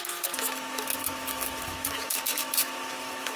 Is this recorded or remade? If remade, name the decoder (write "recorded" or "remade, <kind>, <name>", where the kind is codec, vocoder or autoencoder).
remade, autoencoder, DAC-VAE